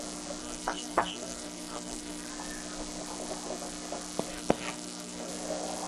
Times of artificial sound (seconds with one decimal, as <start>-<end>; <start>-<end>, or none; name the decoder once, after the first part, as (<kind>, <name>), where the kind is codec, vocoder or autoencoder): 0.4-2.3 (codec, SNAC); 4.3-5.3